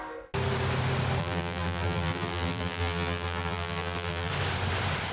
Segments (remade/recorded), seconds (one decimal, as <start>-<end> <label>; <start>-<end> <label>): 0.0-1.2 recorded; 1.2-4.3 remade; 4.3-5.1 recorded